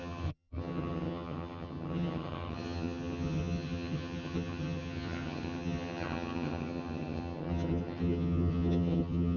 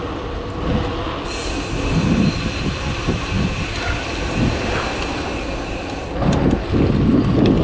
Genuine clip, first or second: second